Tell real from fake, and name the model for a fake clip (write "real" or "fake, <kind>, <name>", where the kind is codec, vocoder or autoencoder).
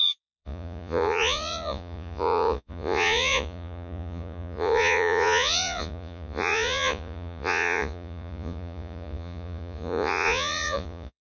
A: fake, vocoder, Vocos